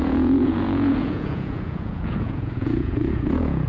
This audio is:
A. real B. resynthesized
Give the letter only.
B